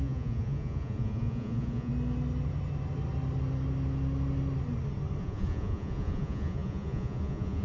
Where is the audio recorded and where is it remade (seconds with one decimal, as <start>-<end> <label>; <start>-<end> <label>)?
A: 0.0-1.9 remade; 1.9-5.2 recorded; 5.2-7.6 remade

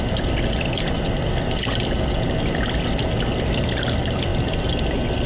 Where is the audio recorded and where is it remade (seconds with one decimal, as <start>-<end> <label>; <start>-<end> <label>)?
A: 0.0-5.3 recorded